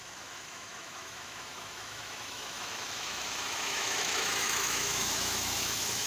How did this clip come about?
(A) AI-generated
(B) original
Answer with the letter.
A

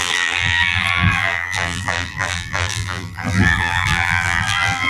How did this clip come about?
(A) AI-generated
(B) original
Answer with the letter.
A